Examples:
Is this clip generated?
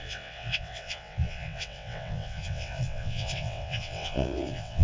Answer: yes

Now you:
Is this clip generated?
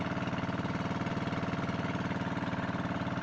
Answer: no